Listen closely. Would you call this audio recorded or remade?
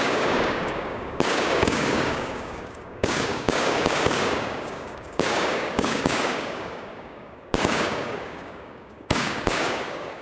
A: remade